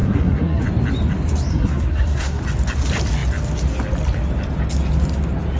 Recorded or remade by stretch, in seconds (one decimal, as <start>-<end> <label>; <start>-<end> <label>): 0.0-0.6 remade; 0.6-1.5 recorded; 1.5-2.4 remade; 2.4-5.6 recorded